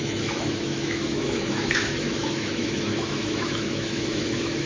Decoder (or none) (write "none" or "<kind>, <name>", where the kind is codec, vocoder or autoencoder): autoencoder, DAC-VAE